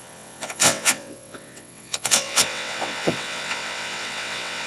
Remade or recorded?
remade